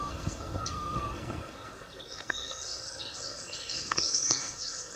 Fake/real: fake